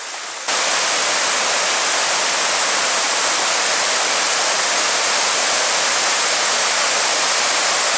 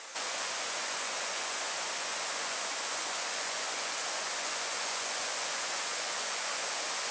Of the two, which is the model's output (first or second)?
second